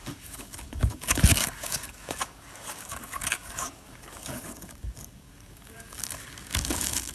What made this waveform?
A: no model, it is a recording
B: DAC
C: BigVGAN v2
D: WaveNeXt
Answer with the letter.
B